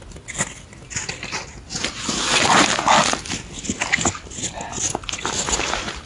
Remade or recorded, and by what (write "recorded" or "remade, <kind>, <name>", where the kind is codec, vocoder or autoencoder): recorded